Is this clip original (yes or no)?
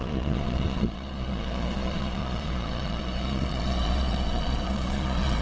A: no